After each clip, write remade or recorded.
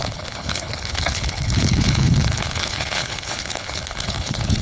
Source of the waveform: remade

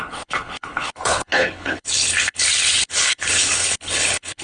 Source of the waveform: remade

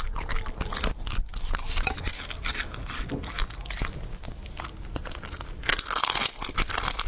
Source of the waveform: recorded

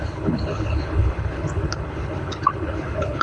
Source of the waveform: remade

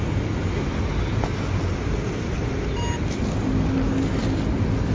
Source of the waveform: recorded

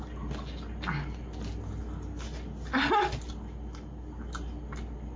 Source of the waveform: recorded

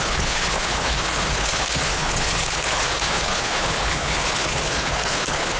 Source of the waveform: remade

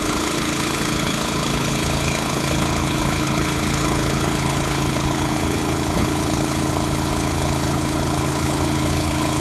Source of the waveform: remade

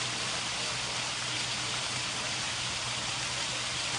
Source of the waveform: recorded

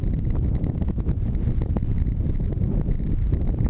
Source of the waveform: recorded